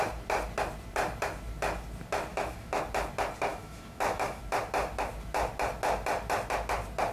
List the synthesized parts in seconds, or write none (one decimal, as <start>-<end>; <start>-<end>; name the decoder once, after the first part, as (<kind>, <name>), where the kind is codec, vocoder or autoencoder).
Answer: 2.3-2.8 (autoencoder, DAC-VAE); 3.5-4.4